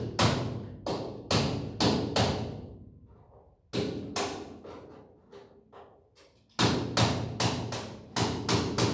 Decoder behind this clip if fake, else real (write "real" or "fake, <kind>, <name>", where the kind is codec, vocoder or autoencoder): real